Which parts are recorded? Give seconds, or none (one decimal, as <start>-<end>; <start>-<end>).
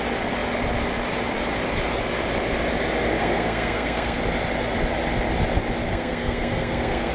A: 0.0-3.2; 4.2-5.9